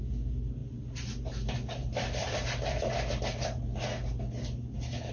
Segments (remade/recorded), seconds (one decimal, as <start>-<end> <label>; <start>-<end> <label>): 0.0-1.8 recorded; 1.8-2.9 remade; 2.9-5.1 recorded